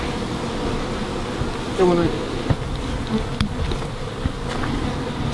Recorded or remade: recorded